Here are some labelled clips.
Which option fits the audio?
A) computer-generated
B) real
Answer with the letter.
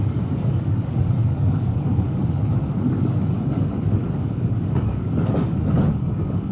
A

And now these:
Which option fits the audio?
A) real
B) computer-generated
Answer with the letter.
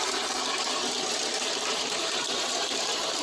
B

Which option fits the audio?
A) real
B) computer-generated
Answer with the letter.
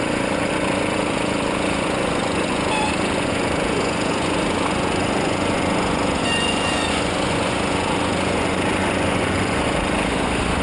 B